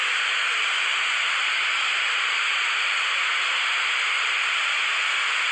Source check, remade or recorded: recorded